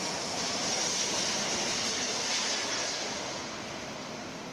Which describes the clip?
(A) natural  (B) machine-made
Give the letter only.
A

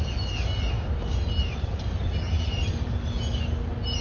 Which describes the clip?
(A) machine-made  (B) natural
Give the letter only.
B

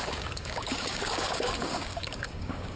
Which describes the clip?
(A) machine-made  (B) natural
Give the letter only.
A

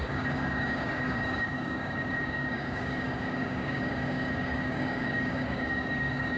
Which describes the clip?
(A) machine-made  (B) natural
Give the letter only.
A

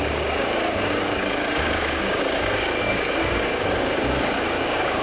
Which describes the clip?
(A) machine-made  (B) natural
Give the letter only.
A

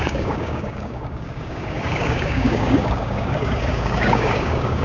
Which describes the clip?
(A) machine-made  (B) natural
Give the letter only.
A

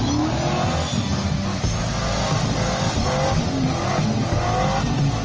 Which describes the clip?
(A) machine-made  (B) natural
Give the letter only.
B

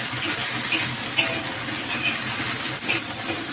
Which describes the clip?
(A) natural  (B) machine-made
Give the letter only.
A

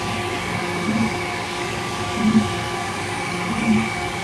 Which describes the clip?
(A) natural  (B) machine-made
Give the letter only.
B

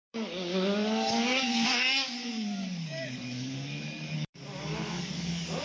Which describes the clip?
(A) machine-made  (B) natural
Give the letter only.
A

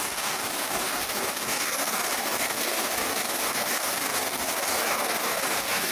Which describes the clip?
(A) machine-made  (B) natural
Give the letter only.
A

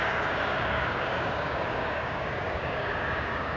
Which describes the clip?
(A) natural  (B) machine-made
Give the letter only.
B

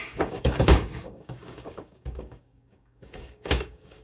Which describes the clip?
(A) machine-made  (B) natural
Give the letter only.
A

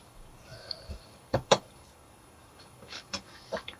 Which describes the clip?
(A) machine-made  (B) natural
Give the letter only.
A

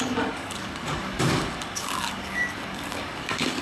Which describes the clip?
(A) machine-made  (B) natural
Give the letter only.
A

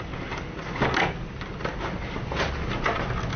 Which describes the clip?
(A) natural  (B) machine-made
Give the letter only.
A